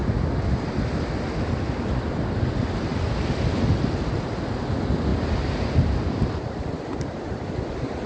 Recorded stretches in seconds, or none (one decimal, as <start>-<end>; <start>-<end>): 0.0-8.1

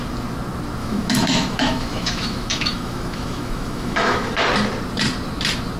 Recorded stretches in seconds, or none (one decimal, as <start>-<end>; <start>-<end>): 0.0-0.8; 4.3-5.8

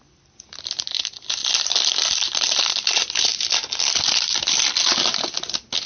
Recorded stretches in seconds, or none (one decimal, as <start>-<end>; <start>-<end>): 0.0-1.4; 2.6-5.9

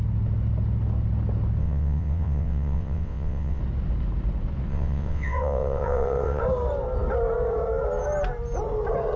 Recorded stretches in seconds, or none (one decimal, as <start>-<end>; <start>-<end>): 0.0-1.6; 3.6-4.7; 6.4-9.2

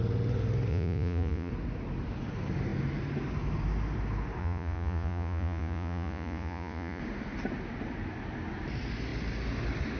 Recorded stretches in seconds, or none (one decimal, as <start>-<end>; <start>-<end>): 0.0-0.7; 1.5-4.4; 7.0-10.0

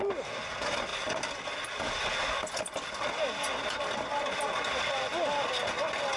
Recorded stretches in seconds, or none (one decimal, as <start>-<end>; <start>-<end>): 0.0-6.2

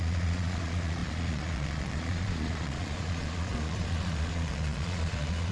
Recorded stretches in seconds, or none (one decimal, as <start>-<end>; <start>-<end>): none

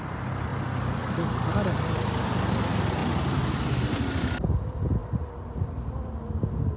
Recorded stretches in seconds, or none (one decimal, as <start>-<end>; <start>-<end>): 0.0-0.5; 1.5-5.0; 5.9-6.8